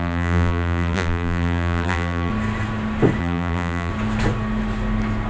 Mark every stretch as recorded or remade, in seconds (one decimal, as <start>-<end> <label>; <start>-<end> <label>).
0.0-2.3 remade; 2.3-3.2 recorded; 3.2-3.9 remade; 3.9-5.3 recorded